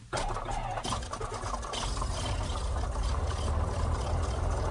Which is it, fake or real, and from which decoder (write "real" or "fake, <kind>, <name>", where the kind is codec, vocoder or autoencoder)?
real